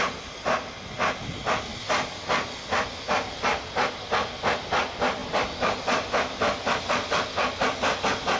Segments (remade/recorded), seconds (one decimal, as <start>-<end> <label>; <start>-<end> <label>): 0.0-8.4 recorded